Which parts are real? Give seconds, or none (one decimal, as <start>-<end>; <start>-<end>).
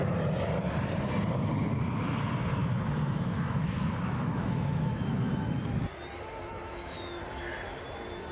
0.0-2.6; 5.3-6.5; 7.2-8.3